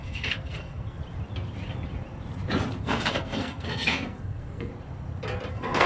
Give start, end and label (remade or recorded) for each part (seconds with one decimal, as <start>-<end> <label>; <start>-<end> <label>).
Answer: 0.0-1.0 remade; 1.0-2.8 recorded; 2.8-4.7 remade; 4.7-5.5 recorded; 5.5-5.9 remade